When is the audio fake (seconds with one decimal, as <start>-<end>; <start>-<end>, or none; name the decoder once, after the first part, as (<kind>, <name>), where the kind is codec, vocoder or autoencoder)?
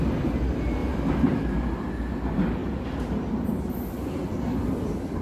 2.6-3.8 (vocoder, BigVGAN v2)